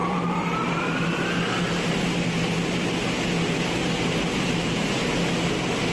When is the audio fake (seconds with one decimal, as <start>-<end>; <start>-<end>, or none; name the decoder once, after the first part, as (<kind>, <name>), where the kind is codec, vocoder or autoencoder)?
0.0-0.8 (vocoder, BigVGAN v2)